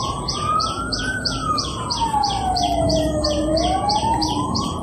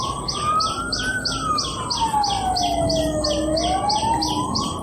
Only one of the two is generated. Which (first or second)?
first